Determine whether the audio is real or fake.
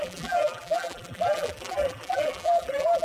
fake